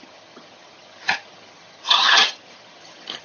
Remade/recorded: remade